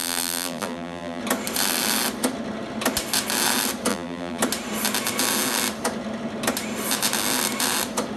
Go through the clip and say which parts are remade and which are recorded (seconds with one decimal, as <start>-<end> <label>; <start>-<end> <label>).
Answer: 0.0-1.2 remade; 1.2-3.9 recorded; 3.9-4.4 remade; 4.4-8.2 recorded